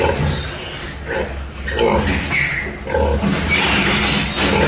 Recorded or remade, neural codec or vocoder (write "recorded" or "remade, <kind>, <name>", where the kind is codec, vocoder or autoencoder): recorded